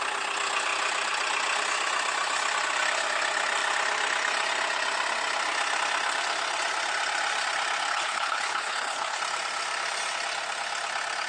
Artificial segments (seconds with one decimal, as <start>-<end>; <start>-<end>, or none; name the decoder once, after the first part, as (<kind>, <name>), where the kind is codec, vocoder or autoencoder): 7.9-9.2 (codec, HILCodec)